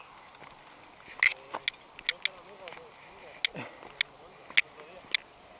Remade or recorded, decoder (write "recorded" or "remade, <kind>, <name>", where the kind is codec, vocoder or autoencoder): recorded